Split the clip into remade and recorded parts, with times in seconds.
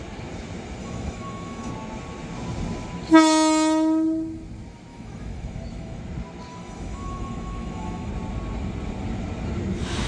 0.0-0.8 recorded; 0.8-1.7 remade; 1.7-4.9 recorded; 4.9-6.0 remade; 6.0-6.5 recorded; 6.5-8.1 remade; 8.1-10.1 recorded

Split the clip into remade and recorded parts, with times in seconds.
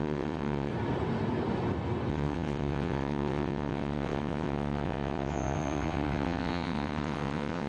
0.0-0.7 remade; 0.7-2.1 recorded; 2.1-7.7 remade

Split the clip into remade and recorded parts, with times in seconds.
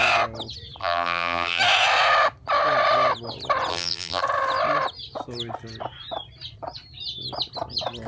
0.0-0.8 recorded; 0.8-1.6 remade; 1.6-3.7 recorded; 3.7-4.2 remade; 4.2-8.1 recorded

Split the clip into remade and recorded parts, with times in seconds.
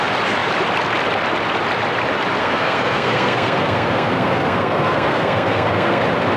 0.0-2.4 recorded; 2.4-6.0 remade; 6.0-6.4 recorded